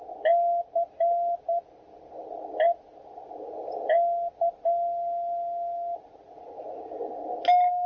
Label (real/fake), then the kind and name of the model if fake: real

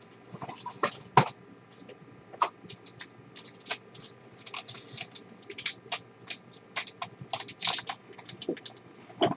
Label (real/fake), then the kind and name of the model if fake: real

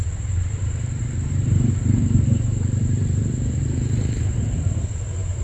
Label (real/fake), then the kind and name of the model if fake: fake, vocoder, BigVGAN v2